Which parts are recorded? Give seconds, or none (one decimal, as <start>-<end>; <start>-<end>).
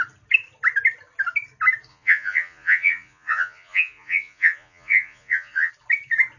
0.0-1.9; 5.7-6.4